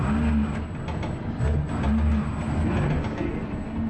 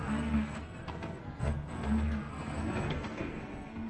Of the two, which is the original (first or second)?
first